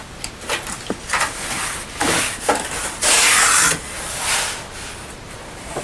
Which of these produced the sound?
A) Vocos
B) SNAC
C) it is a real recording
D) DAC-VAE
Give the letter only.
C